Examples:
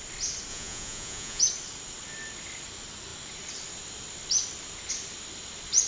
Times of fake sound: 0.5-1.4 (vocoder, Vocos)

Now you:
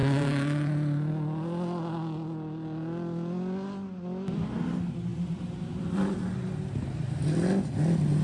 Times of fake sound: 0.0-1.1 (vocoder, BigVGAN v2); 5.1-6.0